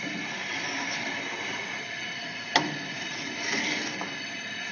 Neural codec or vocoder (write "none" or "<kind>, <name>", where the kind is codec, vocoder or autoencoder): none